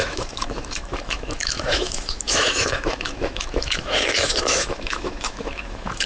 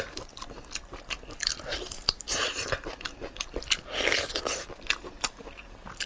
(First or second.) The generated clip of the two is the first